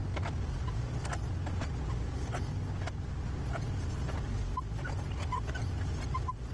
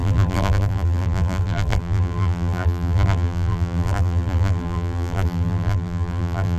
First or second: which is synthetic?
second